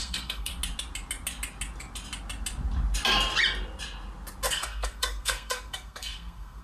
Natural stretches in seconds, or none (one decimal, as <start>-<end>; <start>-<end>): 0.5-4.5